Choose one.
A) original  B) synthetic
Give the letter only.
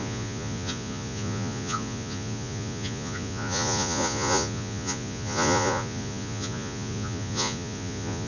B